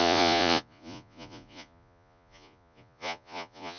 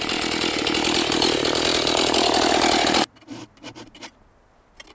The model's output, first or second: first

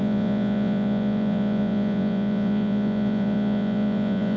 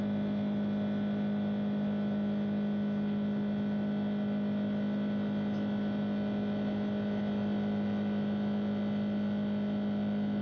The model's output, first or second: first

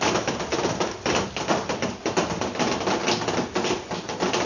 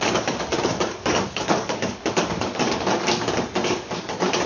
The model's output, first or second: second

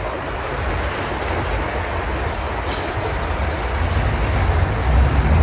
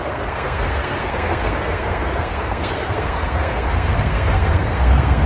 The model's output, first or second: second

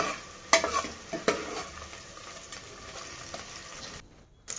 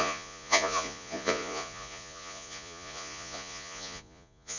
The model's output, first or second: second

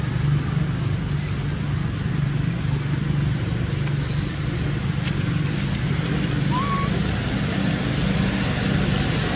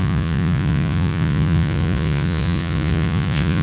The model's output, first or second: second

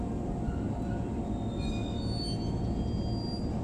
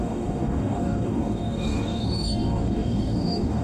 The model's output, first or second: second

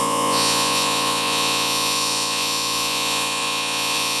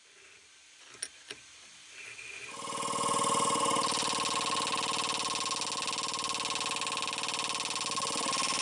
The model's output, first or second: first